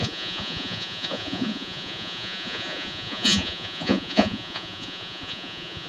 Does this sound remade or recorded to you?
remade